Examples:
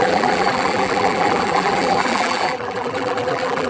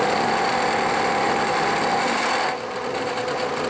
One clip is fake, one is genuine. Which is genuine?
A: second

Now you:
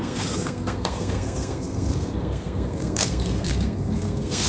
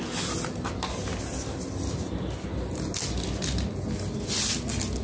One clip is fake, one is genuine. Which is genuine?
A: second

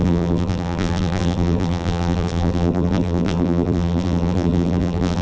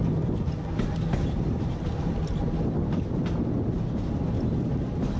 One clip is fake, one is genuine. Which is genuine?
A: second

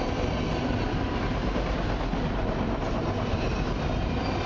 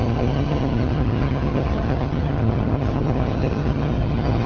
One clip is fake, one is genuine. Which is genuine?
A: first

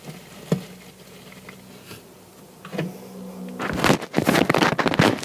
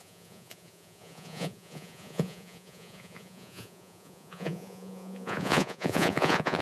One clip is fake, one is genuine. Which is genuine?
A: first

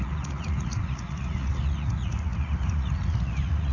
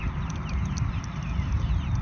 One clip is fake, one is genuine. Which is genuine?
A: second